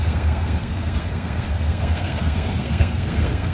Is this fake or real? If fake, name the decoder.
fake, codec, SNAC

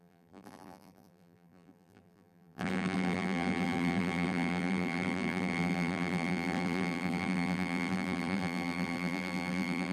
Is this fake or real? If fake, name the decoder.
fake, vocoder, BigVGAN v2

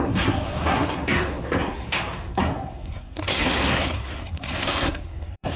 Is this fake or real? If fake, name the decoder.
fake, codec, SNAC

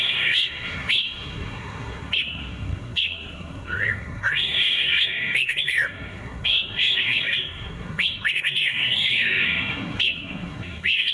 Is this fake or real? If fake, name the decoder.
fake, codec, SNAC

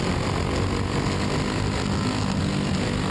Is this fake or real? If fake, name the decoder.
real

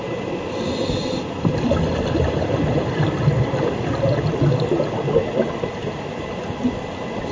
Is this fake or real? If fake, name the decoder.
real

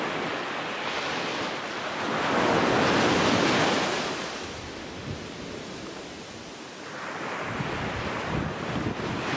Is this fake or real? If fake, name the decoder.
real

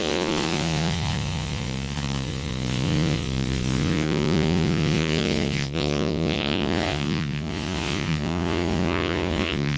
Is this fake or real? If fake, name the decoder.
fake, vocoder, Vocos